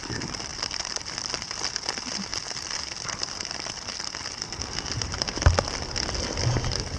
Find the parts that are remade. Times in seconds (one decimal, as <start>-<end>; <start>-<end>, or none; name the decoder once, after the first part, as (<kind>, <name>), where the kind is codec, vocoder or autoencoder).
0.5-1.3 (vocoder, BigVGAN v2); 2.3-4.4